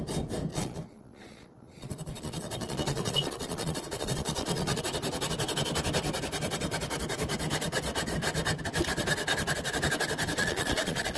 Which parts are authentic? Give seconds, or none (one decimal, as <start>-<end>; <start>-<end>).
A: 0.0-0.5; 4.8-10.4